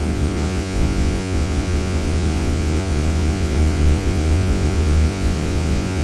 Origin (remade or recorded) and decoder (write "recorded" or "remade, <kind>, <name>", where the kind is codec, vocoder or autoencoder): remade, vocoder, Vocos